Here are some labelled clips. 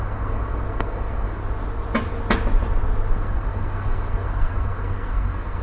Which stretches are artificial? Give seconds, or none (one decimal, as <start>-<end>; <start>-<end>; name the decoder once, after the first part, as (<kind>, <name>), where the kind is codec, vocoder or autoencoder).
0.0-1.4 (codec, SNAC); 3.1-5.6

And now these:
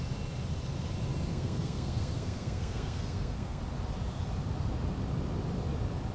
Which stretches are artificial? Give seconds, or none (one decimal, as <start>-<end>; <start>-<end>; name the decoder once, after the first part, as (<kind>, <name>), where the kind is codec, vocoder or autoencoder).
1.3-3.6 (codec, SNAC)

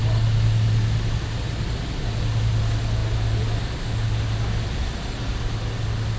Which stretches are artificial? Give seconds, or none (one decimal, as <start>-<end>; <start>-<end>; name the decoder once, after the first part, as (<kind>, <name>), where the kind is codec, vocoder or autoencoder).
none

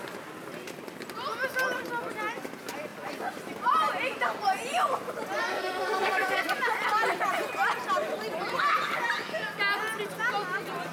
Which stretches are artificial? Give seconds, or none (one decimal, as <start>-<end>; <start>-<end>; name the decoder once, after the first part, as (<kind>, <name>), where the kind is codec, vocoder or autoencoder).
5.5-6.4 (codec, SNAC)

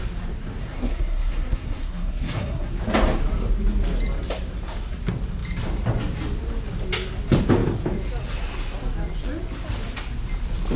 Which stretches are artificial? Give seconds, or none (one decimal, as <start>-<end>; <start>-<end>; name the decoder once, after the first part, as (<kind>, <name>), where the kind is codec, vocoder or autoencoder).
0.6-2.7 (codec, SNAC)